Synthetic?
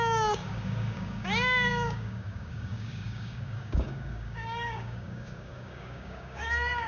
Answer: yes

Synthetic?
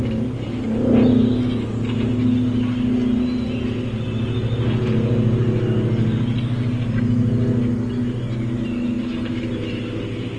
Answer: no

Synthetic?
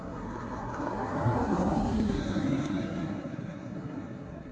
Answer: yes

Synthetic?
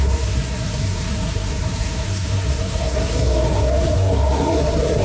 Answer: yes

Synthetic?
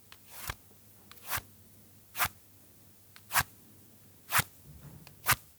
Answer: no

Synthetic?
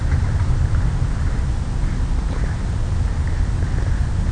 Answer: no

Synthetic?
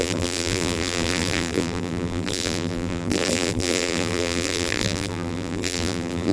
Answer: yes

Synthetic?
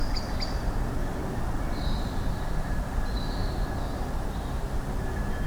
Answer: no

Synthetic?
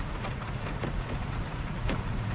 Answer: yes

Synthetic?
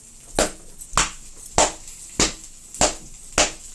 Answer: no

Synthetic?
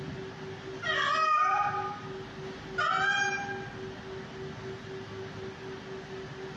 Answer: no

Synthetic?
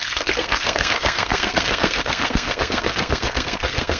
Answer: yes